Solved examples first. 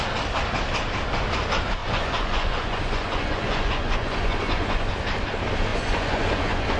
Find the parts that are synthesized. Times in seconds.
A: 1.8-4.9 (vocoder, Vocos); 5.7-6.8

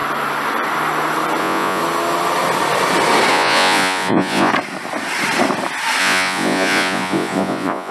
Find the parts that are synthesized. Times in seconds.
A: 1.4-1.8 (vocoder, Vocos); 3.3-4.5; 6.0-7.9

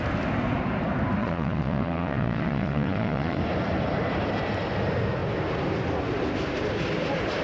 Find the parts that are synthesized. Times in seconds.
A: 1.2-3.4 (vocoder, Vocos)